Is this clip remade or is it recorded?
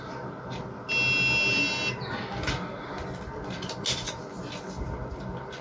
recorded